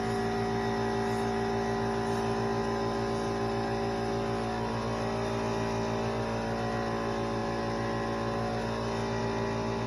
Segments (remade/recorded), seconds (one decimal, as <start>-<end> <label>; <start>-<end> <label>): 0.0-9.9 recorded